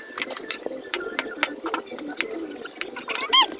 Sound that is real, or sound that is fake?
real